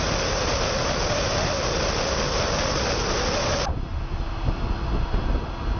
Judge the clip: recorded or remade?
recorded